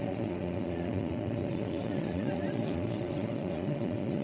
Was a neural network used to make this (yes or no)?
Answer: yes